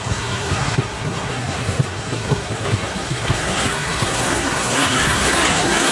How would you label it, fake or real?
fake